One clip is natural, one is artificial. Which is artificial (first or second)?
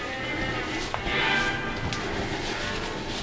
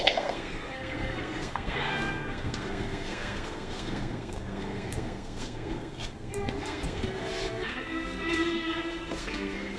second